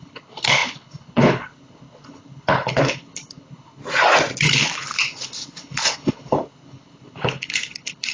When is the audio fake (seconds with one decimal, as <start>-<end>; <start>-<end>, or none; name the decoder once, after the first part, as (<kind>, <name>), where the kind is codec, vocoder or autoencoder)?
0.0-3.8 (codec, HILCodec); 4.4-8.1

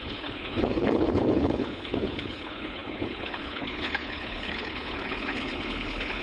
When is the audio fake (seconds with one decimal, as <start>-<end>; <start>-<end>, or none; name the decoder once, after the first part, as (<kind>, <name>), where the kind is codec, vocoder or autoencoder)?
0.0-6.2 (codec, HILCodec)